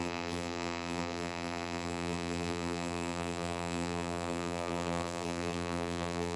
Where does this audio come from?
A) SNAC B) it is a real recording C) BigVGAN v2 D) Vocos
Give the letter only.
C